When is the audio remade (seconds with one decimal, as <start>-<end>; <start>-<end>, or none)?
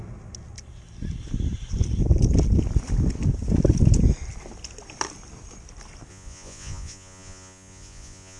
6.1-8.4